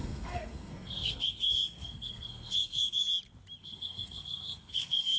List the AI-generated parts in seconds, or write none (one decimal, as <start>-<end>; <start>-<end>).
0.0-3.1; 3.6-5.2